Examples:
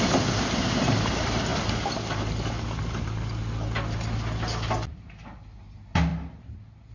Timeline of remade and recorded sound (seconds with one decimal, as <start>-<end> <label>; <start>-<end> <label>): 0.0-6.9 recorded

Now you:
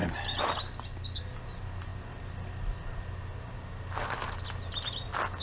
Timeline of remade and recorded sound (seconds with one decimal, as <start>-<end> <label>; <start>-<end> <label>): 0.0-5.4 recorded

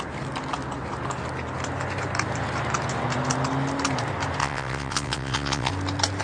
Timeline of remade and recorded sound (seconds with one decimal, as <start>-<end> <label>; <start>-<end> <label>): 0.0-4.4 recorded; 4.4-5.7 remade; 5.7-6.2 recorded

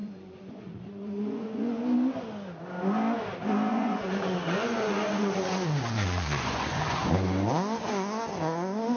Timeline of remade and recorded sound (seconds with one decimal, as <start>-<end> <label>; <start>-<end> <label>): 0.0-1.8 remade; 1.8-3.7 recorded; 3.7-7.1 remade; 7.1-9.0 recorded